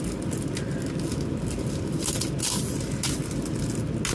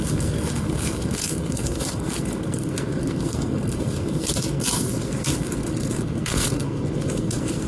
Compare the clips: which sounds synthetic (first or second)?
second